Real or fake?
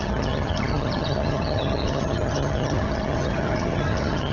fake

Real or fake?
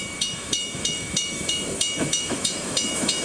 fake